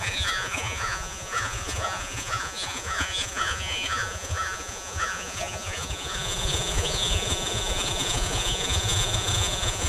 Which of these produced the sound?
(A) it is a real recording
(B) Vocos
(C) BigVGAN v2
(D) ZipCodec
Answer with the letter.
B